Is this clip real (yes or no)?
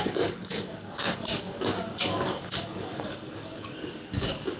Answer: no